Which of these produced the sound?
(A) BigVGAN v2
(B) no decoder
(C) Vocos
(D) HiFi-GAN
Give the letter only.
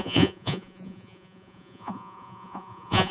C